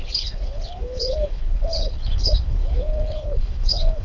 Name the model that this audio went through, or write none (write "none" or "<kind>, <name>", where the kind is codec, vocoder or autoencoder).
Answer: codec, HILCodec